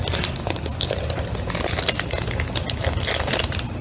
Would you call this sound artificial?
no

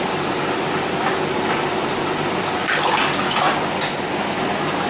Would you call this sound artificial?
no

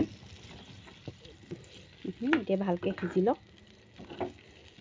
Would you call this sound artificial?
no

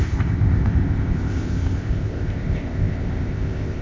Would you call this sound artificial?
yes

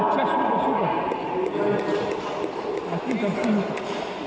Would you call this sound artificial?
no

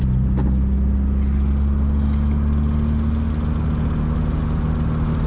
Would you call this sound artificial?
no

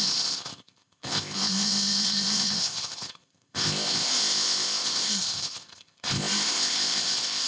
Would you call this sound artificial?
yes